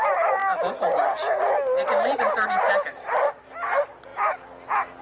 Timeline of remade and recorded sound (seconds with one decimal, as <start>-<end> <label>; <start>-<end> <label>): 0.0-5.0 recorded